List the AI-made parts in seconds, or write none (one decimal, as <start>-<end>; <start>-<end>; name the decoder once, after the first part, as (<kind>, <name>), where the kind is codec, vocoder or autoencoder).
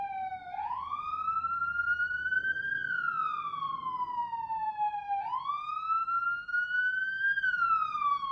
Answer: 0.0-2.5 (vocoder, BigVGAN v2); 7.4-8.3